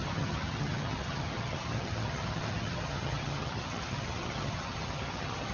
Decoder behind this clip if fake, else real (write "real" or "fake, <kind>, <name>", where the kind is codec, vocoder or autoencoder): fake, vocoder, HiFi-GAN